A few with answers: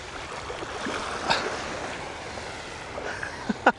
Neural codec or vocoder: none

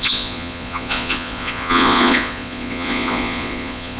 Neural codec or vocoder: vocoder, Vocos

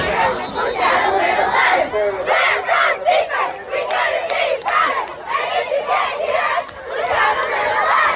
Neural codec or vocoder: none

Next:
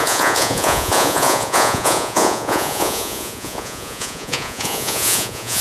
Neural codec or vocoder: vocoder, Vocos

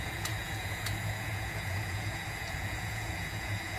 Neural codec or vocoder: vocoder, Vocos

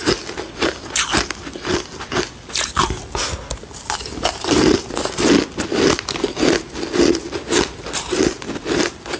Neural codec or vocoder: none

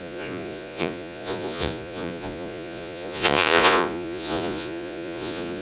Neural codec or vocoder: vocoder, Vocos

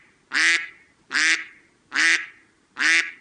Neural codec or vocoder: none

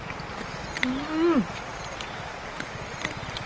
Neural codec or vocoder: none